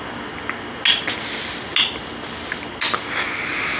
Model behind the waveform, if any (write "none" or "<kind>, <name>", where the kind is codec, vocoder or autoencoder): none